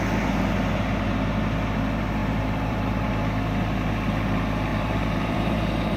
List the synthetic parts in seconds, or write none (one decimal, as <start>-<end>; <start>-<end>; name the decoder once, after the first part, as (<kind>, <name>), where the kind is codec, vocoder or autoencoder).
2.2-3.1 (vocoder, BigVGAN v2); 4.7-6.0